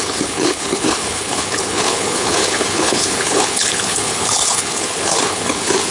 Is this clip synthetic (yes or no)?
yes